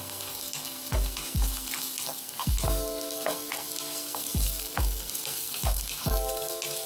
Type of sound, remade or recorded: remade